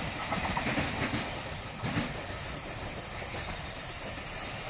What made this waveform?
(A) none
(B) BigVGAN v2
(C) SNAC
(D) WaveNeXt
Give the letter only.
A